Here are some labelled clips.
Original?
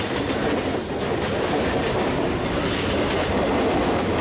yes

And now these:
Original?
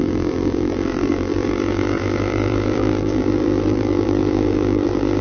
no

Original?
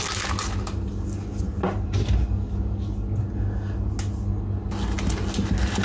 yes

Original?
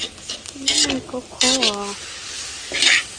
yes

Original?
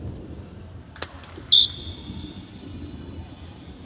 yes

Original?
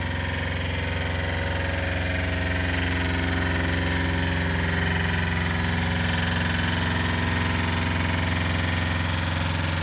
yes